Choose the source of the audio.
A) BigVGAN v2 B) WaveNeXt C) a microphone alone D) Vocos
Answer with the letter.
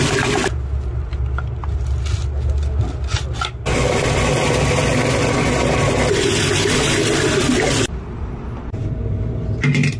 C